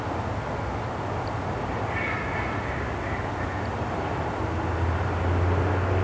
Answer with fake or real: real